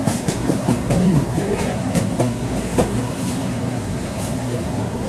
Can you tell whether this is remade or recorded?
remade